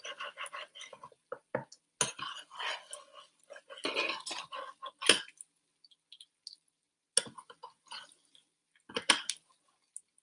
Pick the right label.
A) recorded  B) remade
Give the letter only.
A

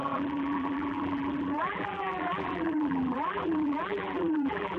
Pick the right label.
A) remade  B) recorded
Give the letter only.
A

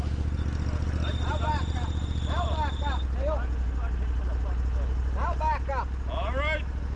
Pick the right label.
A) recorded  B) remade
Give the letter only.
A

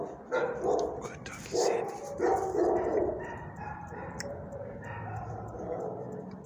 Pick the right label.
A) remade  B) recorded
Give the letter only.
A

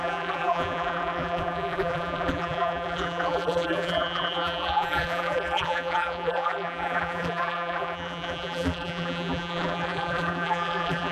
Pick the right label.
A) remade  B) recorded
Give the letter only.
A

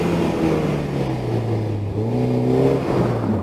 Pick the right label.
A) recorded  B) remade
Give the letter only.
A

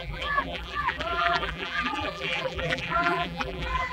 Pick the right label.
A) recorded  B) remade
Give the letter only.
B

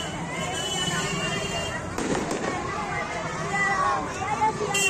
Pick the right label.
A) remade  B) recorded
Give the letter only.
A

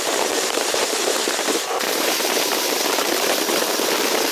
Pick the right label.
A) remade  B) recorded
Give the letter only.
A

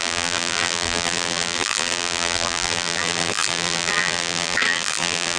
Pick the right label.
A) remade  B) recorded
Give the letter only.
A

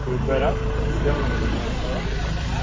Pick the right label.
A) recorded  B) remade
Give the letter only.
B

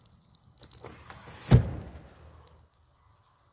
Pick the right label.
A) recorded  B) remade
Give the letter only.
A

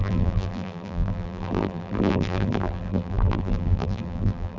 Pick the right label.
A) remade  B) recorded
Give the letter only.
A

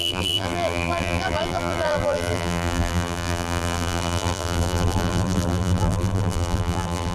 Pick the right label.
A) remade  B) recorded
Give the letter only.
A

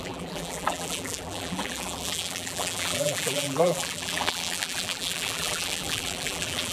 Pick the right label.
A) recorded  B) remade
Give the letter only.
B